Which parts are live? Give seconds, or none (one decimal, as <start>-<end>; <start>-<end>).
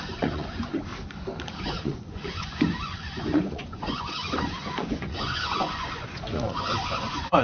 0.9-1.5